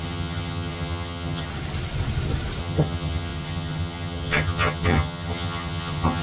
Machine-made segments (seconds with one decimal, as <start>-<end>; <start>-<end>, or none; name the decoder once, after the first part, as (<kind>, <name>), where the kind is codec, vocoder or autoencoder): 0.0-1.5 (vocoder, HiFi-GAN); 2.6-6.2